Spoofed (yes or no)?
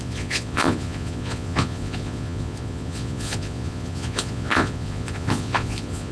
yes